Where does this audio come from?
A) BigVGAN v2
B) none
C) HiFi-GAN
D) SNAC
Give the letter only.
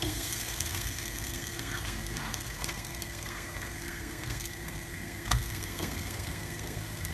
D